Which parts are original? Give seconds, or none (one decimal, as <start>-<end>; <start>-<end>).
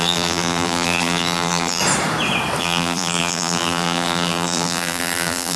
1.8-2.6